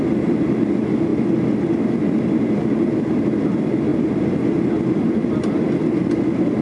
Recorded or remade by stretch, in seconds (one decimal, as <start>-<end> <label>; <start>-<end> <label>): 0.0-3.9 remade; 3.9-5.0 recorded; 5.0-6.6 remade